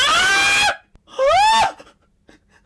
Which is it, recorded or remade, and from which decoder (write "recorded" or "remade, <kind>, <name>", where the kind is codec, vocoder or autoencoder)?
recorded